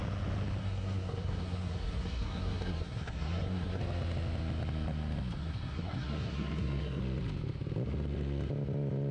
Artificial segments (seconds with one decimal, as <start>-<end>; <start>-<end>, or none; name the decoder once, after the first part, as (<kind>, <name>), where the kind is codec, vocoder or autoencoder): 0.6-3.8 (codec, SNAC); 5.4-7.0